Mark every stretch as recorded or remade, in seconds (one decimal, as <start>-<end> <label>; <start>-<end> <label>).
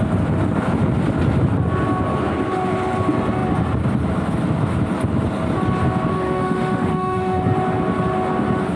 0.0-6.1 recorded; 6.1-7.4 remade; 7.4-8.8 recorded